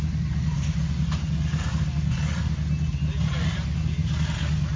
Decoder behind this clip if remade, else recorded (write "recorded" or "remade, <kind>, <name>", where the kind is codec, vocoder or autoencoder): recorded